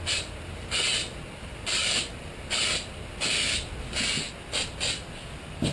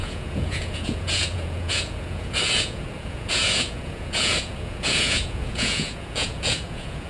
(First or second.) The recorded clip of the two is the first